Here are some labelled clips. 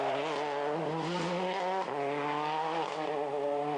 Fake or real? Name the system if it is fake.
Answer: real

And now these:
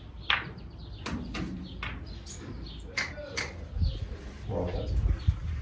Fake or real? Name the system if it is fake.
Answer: real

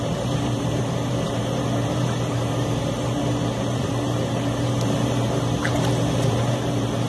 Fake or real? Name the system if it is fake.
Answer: fake, vocoder, BigVGAN v2